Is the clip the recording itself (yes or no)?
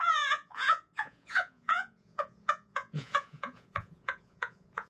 no